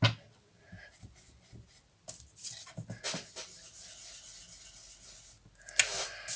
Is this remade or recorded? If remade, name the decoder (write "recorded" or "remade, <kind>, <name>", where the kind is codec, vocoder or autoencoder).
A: recorded